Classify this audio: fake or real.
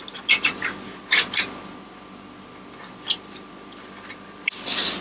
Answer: real